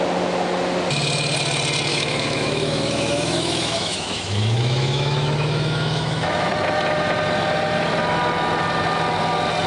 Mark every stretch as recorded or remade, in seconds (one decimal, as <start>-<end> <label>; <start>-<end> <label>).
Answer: 0.0-1.9 recorded; 1.9-6.5 remade; 6.5-9.7 recorded